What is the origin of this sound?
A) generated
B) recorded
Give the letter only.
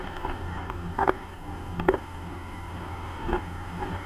A